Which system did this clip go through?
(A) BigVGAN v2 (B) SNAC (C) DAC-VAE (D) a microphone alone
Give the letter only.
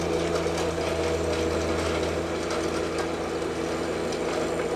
D